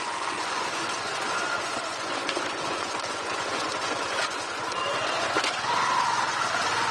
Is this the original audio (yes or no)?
no